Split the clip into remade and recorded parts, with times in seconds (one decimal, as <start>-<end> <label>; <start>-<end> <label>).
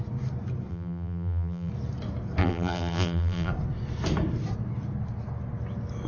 0.0-0.7 recorded; 0.7-1.7 remade; 1.7-2.4 recorded; 2.4-3.5 remade; 3.5-6.1 recorded